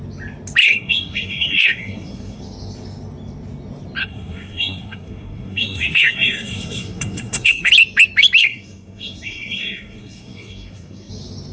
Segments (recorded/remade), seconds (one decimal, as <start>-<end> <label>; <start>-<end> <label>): 0.0-0.6 recorded; 0.6-2.4 remade; 2.4-4.0 recorded; 4.0-7.7 remade; 7.7-8.4 recorded; 8.4-11.1 remade; 11.1-11.5 recorded